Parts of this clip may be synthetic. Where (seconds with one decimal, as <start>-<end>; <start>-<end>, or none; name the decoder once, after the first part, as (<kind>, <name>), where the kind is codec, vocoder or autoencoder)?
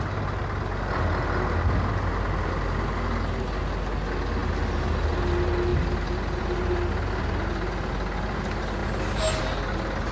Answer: none